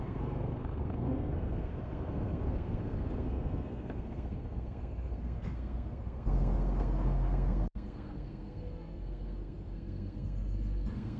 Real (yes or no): no